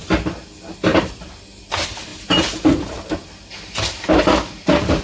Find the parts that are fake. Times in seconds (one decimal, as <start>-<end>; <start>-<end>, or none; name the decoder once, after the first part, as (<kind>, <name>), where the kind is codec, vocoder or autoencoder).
none